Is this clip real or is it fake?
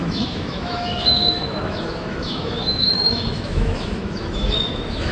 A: fake